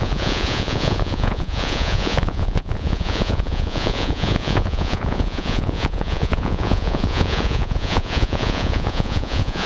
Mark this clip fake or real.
fake